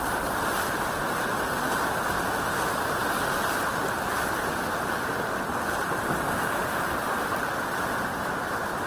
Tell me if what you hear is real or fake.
real